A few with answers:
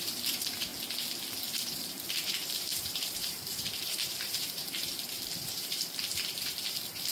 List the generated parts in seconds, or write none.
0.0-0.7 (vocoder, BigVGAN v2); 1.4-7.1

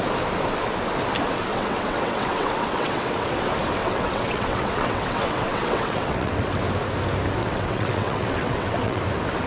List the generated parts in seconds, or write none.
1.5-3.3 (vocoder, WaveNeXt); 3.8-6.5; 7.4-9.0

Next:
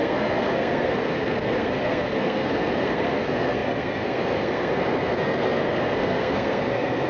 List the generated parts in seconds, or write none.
0.0-7.1 (codec, SNAC)

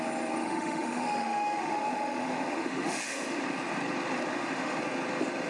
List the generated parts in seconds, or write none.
0.4-3.4 (autoencoder, DAC-VAE); 4.3-4.8